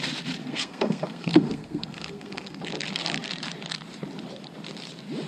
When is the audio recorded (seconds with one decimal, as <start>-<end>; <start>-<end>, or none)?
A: 0.0-0.4; 2.6-5.3